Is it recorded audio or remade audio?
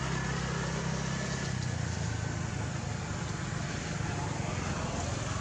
recorded